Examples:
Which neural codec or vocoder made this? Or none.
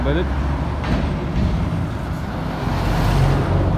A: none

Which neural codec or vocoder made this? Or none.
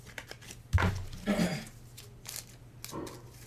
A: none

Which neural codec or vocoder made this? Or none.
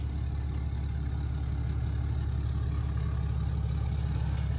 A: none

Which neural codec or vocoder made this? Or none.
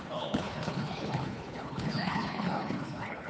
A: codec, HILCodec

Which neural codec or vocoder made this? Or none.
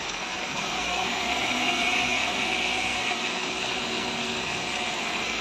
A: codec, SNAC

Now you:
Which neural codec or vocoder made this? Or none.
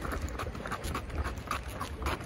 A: none